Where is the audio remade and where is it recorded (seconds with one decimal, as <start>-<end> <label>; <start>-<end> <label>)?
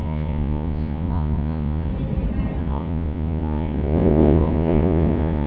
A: 0.0-1.9 remade; 1.9-2.6 recorded; 2.6-5.5 remade